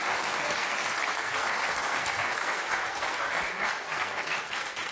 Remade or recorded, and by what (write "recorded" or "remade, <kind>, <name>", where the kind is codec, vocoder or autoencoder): remade, codec, SNAC